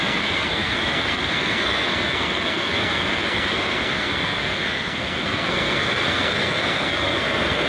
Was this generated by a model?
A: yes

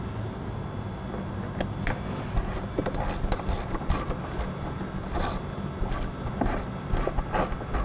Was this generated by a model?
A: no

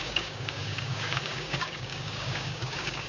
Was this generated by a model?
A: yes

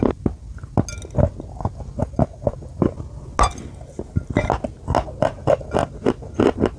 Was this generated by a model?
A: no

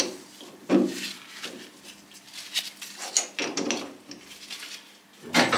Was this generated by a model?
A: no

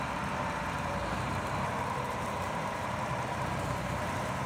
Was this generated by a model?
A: yes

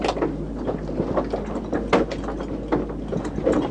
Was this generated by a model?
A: no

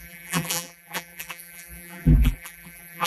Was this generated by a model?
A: yes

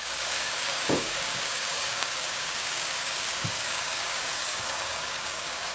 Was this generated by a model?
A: yes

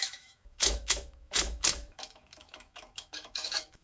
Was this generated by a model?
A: yes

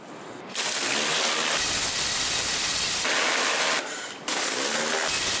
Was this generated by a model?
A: no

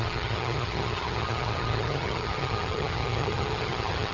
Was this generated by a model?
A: yes